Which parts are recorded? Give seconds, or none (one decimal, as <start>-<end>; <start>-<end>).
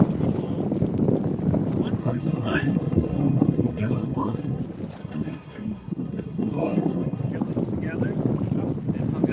0.0-2.0; 4.6-5.0; 7.3-9.3